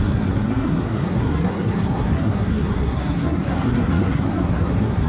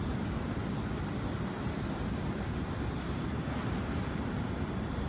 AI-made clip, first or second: first